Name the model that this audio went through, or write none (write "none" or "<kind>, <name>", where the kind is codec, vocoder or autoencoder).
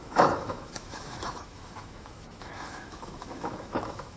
autoencoder, DAC-VAE